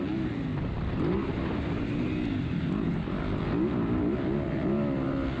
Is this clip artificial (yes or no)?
no